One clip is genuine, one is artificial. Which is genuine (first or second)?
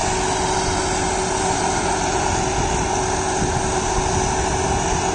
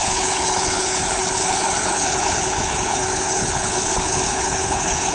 first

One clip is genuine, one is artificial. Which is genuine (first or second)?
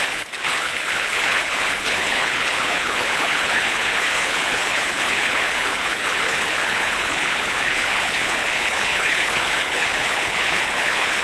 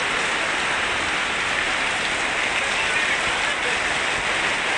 second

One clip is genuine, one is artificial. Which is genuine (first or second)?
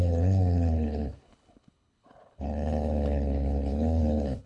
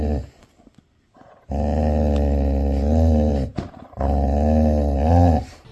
second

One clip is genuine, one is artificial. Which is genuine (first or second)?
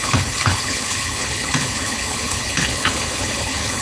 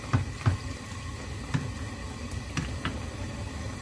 second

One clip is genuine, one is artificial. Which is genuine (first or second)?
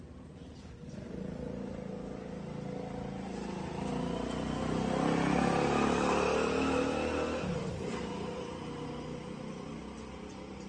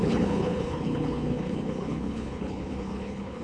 first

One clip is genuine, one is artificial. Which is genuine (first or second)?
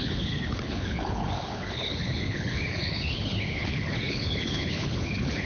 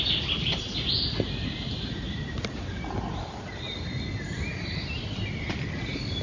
second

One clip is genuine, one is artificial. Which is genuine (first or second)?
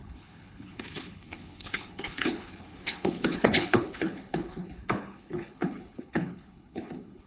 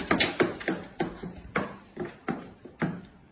second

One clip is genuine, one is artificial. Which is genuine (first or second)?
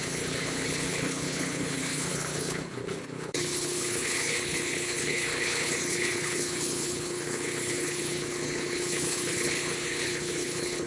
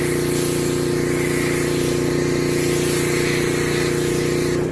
second